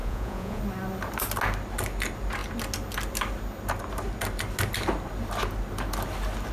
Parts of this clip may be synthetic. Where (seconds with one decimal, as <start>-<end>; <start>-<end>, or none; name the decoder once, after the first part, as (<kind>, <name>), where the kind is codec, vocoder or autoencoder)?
0.0-0.6 (vocoder, Vocos)